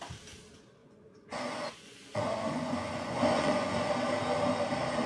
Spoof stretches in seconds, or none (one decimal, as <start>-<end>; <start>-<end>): 0.8-3.9